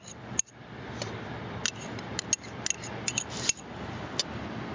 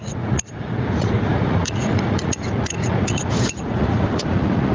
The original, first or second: first